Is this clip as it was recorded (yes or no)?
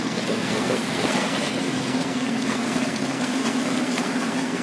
no